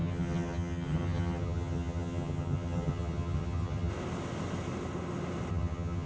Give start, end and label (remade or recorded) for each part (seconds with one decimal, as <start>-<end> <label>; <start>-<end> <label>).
0.0-3.9 remade; 3.9-5.5 recorded; 5.5-6.1 remade